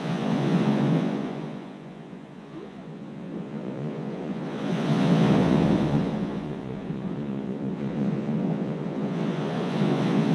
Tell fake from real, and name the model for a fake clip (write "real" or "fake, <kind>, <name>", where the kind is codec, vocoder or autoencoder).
fake, vocoder, Vocos